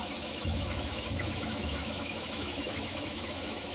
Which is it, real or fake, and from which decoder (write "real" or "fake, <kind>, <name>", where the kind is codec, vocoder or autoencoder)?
fake, autoencoder, DAC-VAE